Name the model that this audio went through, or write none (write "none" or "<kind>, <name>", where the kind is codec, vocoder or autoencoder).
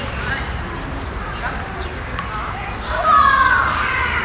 none